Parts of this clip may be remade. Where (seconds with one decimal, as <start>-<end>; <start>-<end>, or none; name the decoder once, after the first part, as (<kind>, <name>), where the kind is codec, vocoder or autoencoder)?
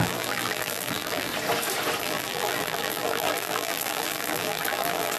0.0-1.3 (vocoder, BigVGAN v2); 2.0-5.2